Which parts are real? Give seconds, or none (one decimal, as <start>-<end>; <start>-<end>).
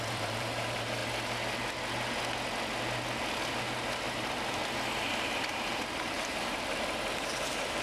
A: 1.0-3.6; 4.6-5.1